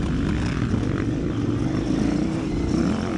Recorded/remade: recorded